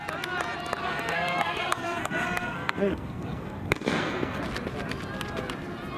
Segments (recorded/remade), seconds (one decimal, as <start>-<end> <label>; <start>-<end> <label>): 0.0-0.8 recorded; 0.8-4.4 remade; 4.4-6.0 recorded